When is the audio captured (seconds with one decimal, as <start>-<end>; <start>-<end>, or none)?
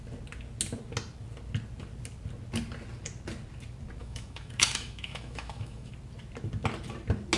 0.0-4.0; 5.9-7.4